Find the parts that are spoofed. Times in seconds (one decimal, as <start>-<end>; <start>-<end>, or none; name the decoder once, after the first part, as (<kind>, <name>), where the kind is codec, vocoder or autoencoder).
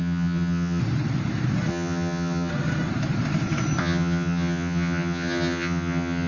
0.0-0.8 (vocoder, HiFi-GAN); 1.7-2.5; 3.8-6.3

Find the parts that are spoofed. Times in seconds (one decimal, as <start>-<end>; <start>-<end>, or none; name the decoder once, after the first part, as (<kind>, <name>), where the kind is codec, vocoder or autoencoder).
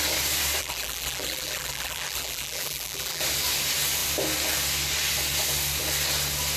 0.6-3.2 (vocoder, BigVGAN v2)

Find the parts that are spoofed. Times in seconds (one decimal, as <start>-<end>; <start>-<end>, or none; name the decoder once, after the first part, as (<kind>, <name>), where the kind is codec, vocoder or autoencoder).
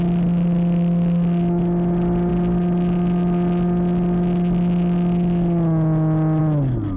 none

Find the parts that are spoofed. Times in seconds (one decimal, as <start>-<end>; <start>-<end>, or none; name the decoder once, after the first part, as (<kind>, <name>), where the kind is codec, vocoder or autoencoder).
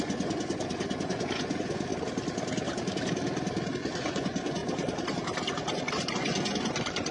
0.0-1.9 (vocoder, Vocos); 3.7-4.6; 6.1-7.1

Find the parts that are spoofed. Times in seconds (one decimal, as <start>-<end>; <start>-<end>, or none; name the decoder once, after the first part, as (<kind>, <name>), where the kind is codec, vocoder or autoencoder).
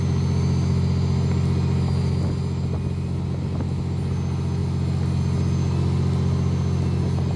none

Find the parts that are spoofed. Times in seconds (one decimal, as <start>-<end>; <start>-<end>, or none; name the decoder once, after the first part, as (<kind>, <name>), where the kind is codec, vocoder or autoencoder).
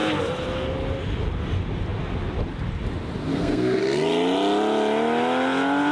3.3-3.8 (codec, SNAC)